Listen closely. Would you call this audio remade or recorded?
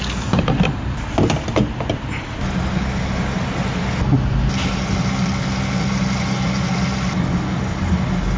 recorded